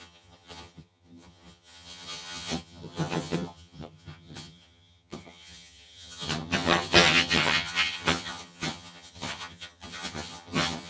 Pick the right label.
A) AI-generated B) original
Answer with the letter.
A